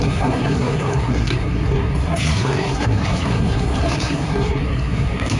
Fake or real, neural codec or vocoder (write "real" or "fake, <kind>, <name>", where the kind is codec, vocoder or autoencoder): fake, codec, SNAC